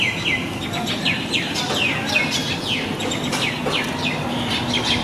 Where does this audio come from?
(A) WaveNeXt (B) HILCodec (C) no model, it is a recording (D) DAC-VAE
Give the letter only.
C